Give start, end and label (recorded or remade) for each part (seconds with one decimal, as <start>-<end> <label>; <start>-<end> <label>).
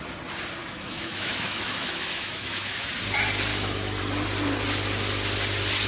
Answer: 0.0-0.6 recorded; 0.6-2.9 remade; 2.9-3.5 recorded; 3.5-4.0 remade; 4.0-5.9 recorded